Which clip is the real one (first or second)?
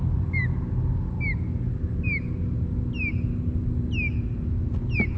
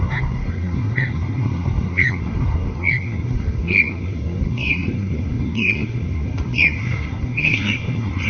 first